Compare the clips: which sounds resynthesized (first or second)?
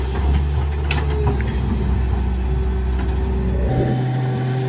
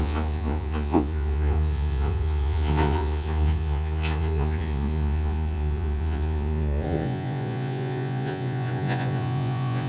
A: second